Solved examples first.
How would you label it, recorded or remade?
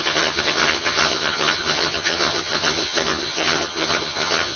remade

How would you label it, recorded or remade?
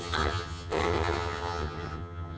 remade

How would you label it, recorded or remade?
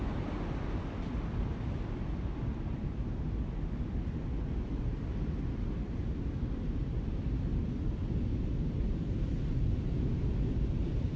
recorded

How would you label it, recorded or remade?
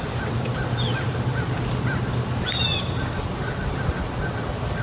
recorded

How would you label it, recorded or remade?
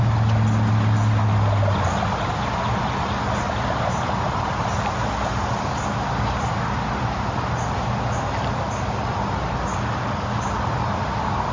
recorded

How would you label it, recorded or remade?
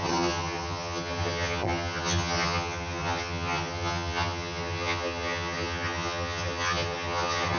remade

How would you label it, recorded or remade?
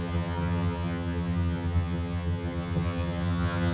remade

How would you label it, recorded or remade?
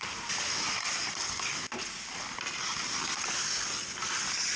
recorded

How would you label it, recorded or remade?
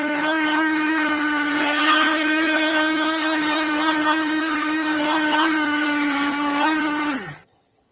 remade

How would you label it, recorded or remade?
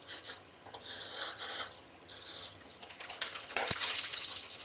remade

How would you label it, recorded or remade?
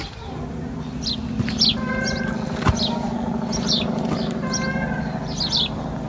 recorded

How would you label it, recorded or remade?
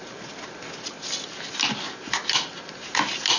recorded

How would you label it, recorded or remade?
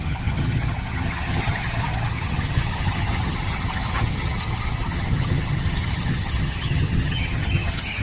remade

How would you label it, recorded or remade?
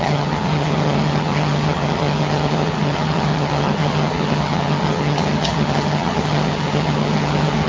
remade